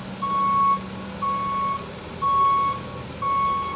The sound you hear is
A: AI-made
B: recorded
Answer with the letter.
B